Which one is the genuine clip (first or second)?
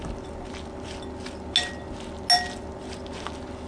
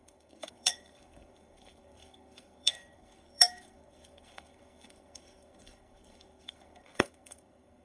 first